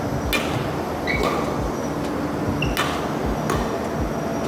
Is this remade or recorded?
recorded